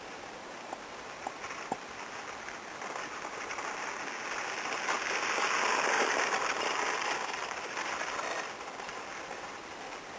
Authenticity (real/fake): real